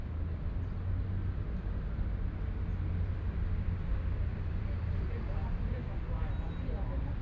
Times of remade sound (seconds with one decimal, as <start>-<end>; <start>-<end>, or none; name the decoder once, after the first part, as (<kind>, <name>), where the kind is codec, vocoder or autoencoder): 2.7-6.3 (vocoder, BigVGAN v2)